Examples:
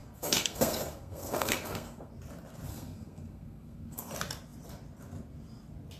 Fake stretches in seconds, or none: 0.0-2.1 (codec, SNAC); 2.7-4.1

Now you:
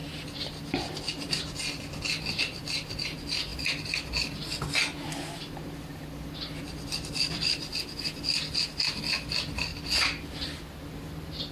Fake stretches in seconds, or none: 0.0-1.0 (vocoder, BigVGAN v2)

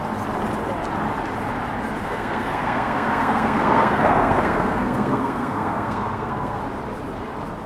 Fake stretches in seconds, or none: 2.0-6.6 (codec, SNAC)

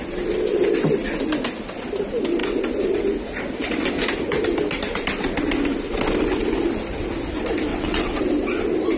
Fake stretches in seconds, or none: 7.7-8.2 (vocoder, WaveNeXt)